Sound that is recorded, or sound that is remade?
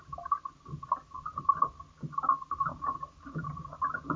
recorded